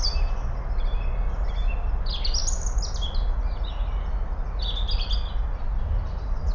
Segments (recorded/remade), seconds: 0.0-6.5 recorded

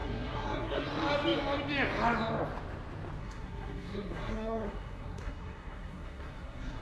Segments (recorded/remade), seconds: 0.0-0.9 remade; 0.9-3.2 recorded; 3.2-6.8 remade

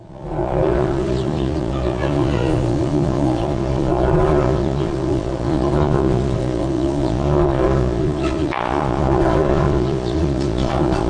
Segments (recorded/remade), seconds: 0.0-11.1 remade

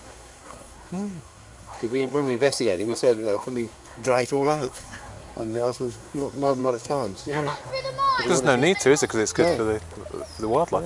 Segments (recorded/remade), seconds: 0.0-7.7 remade; 7.7-10.9 recorded

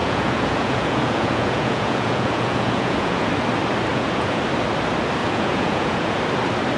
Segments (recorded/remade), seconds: 0.0-3.3 remade; 3.3-3.9 recorded; 3.9-4.4 remade; 4.4-5.2 recorded; 5.2-6.2 remade; 6.2-6.8 recorded